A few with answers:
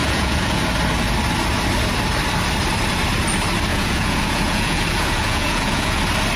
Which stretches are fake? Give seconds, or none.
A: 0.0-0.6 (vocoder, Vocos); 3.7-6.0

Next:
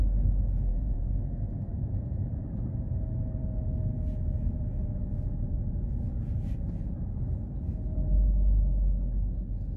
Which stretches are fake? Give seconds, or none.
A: 0.7-1.2 (vocoder, Vocos)

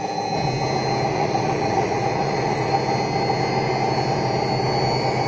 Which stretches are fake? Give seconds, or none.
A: 1.1-2.7 (vocoder, Vocos)

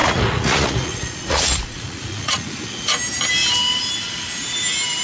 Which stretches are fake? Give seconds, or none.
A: 0.0-3.0 (vocoder, Vocos)